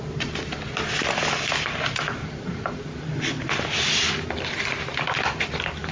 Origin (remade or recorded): recorded